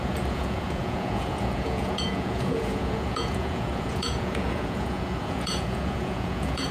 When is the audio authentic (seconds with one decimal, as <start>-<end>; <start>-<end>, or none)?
none